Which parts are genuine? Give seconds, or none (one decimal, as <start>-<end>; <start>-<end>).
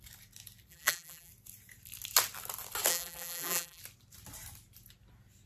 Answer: 0.0-0.7; 1.3-2.9; 3.8-5.5